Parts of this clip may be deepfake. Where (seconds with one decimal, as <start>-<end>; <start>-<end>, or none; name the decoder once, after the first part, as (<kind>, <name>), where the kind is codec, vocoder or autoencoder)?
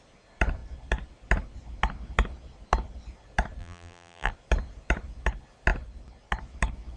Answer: 3.6-4.3 (vocoder, BigVGAN v2)